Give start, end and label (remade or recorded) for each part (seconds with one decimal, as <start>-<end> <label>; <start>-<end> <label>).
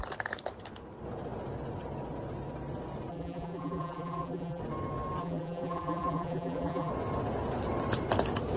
0.0-3.1 recorded; 3.1-4.6 remade; 4.6-5.2 recorded; 5.2-6.9 remade; 6.9-8.6 recorded